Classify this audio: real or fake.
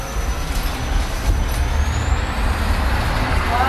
real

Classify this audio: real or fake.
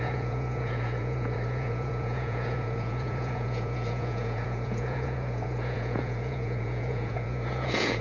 fake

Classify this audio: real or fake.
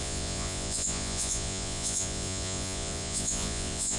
fake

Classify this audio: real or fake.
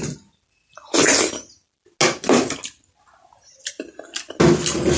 real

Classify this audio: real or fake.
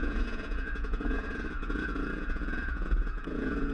fake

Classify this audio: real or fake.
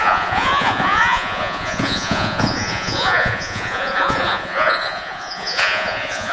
fake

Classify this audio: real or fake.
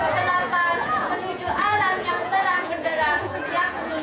fake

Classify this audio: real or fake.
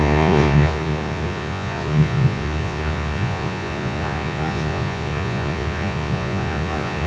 fake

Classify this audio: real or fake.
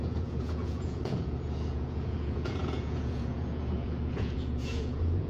fake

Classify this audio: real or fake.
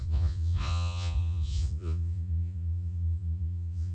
fake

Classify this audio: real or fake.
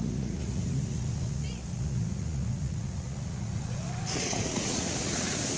fake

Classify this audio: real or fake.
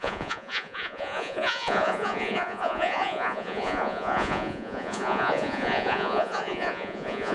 fake